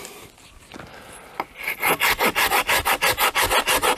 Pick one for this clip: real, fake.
real